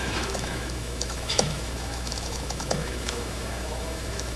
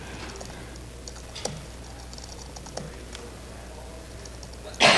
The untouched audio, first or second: second